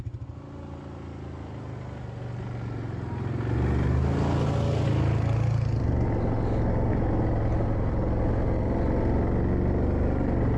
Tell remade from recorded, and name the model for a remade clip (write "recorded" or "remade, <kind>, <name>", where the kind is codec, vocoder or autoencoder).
recorded